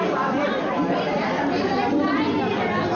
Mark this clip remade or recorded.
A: recorded